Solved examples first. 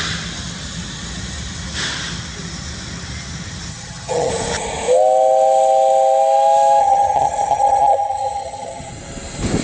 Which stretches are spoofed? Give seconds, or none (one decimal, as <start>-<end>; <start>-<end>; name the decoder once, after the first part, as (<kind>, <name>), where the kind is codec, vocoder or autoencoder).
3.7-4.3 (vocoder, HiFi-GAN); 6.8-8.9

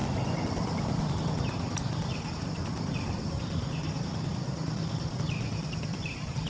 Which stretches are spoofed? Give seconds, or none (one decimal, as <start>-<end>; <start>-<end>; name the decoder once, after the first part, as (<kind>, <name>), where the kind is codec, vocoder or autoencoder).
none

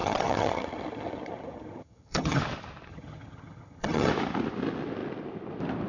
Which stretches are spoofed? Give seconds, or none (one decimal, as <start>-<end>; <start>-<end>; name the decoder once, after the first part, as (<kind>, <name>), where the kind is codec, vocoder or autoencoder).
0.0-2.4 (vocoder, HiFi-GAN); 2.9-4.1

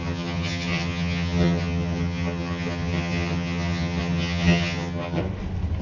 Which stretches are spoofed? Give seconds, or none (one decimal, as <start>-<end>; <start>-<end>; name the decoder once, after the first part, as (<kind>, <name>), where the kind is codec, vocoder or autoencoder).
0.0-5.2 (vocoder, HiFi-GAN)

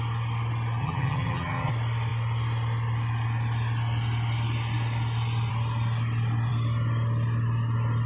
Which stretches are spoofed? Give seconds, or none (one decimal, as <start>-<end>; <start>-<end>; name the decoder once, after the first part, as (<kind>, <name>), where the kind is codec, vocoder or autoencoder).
0.8-1.7 (vocoder, HiFi-GAN)

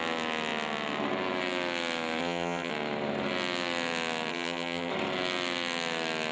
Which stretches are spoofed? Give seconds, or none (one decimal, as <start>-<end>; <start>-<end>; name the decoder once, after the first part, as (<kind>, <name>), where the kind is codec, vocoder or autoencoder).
2.2-2.7 (vocoder, HiFi-GAN); 4.3-4.9